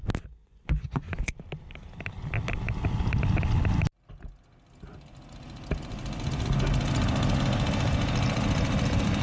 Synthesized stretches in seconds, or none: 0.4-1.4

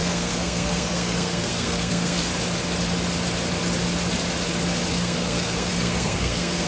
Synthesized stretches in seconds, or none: 0.0-2.3; 4.9-6.7

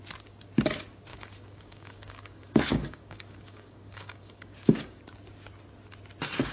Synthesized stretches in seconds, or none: 1.1-5.0